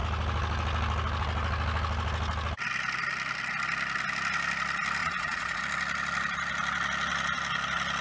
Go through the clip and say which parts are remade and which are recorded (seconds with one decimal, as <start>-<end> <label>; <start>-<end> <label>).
0.0-5.0 recorded; 5.0-5.6 remade; 5.6-8.0 recorded